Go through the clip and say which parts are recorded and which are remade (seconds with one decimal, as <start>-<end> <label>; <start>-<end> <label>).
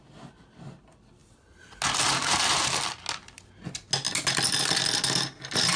0.0-5.8 recorded